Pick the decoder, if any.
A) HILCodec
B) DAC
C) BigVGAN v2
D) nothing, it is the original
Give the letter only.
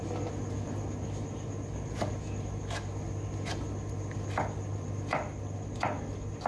D